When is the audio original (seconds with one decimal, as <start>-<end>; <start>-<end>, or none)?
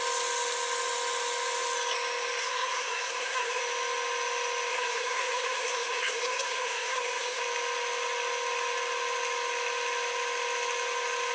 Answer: 0.0-2.4; 3.6-4.7; 7.4-11.3